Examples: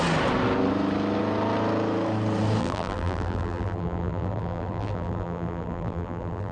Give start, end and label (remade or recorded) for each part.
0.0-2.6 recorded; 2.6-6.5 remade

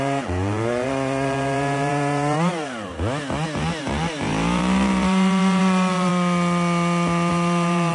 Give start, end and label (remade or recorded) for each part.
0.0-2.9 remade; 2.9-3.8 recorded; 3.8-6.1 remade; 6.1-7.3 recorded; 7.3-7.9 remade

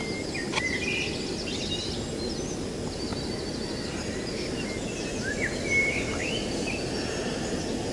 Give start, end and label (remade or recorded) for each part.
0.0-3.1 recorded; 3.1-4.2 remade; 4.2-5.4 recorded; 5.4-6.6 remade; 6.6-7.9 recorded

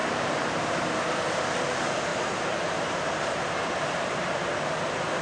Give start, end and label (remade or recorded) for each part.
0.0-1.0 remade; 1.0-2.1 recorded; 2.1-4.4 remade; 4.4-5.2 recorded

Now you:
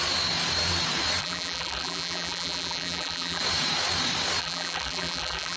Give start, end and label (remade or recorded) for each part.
0.0-1.2 recorded; 1.2-3.4 remade; 3.4-4.4 recorded; 4.4-5.6 remade

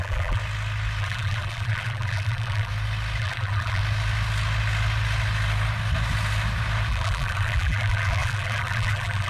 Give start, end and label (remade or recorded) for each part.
0.0-0.4 remade; 0.4-1.0 recorded; 1.0-2.7 remade; 2.7-3.2 recorded; 3.2-3.8 remade; 3.8-6.9 recorded; 6.9-9.3 remade